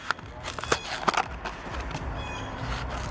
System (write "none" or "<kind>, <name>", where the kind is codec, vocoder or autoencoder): none